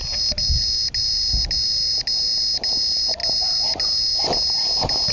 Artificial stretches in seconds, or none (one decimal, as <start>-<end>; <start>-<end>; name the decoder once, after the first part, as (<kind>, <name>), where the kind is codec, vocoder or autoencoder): none